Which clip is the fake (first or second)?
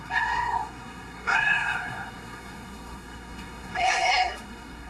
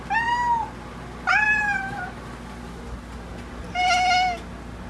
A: first